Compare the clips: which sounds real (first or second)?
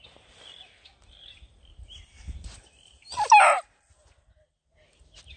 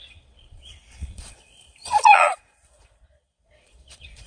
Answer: first